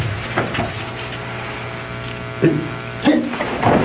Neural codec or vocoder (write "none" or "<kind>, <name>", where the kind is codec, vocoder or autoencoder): none